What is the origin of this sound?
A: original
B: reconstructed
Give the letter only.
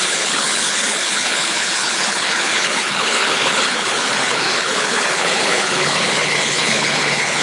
B